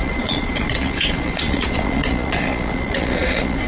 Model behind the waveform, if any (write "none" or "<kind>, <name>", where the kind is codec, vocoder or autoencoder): vocoder, Vocos